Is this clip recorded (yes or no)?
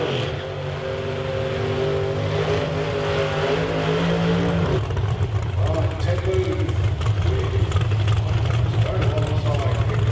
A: yes